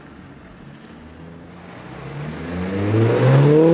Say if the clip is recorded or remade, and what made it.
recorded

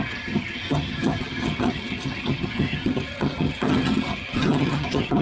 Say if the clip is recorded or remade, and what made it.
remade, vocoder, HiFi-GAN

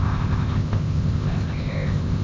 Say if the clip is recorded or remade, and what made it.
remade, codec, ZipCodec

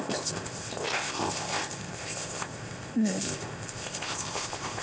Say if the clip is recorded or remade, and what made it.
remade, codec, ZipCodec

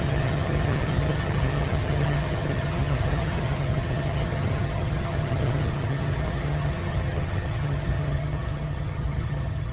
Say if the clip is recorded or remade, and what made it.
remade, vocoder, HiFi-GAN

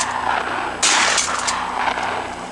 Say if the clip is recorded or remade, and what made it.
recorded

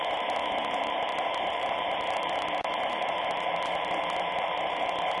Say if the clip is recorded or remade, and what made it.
remade, vocoder, BigVGAN v2